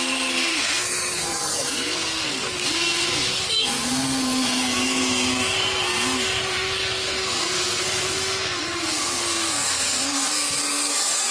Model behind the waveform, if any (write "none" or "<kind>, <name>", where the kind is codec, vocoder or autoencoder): codec, SNAC